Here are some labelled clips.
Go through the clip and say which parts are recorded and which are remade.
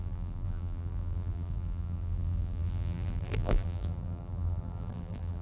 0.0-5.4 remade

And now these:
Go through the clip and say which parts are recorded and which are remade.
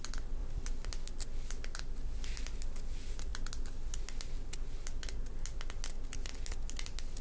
0.0-0.4 recorded; 0.4-1.1 remade; 1.1-7.2 recorded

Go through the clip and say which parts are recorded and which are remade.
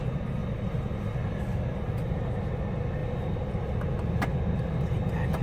0.0-0.4 recorded; 0.4-1.1 remade; 1.1-3.0 recorded; 3.0-3.7 remade; 3.7-5.4 recorded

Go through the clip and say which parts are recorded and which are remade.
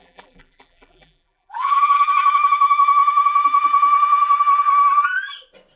0.0-2.1 remade; 2.1-5.8 recorded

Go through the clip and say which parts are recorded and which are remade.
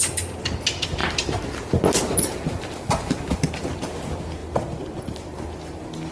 0.0-6.1 recorded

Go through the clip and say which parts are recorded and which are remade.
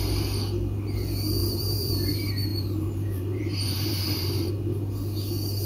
0.0-1.4 recorded; 1.4-2.1 remade; 2.1-2.5 recorded; 2.5-4.5 remade; 4.5-5.7 recorded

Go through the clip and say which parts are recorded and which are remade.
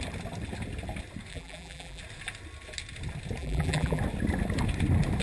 0.0-1.3 recorded; 1.3-2.0 remade; 2.0-3.4 recorded; 3.4-4.0 remade; 4.0-5.2 recorded